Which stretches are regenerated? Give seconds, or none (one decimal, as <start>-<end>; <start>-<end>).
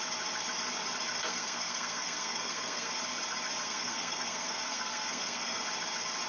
1.1-2.9; 3.6-5.6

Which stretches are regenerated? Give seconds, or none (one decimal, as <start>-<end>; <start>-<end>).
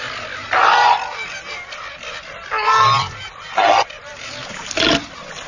none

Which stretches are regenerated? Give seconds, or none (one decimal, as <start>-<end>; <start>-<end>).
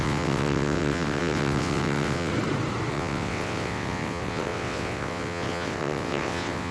0.0-2.3; 2.9-6.7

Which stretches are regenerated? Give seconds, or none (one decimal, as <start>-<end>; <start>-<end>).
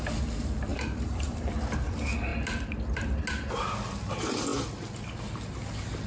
0.7-1.5